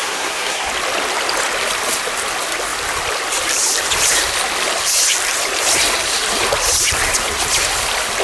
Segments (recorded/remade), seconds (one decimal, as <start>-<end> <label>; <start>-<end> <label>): 0.0-0.7 remade; 0.7-8.2 recorded